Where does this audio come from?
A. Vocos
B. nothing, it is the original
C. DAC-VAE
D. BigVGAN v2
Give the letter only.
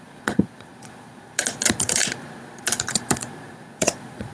A